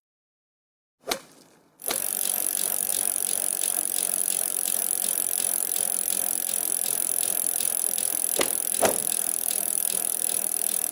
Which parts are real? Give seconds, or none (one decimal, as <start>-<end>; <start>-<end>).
0.9-1.9; 4.8-9.0